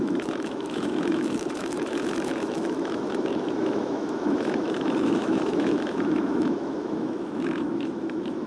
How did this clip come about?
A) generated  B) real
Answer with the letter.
A